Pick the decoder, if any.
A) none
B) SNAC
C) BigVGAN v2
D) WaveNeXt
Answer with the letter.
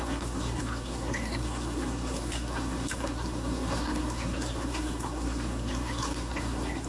B